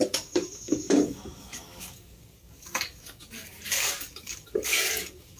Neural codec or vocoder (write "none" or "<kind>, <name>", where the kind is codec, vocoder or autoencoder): codec, DAC